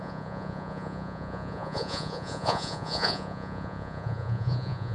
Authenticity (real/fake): fake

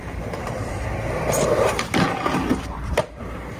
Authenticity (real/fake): fake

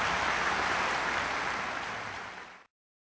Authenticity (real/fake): real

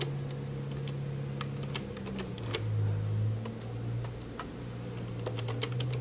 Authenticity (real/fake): real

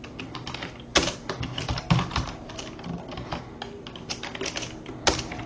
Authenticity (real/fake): real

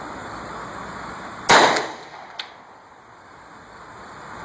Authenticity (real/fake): real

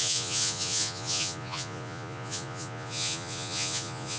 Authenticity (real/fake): fake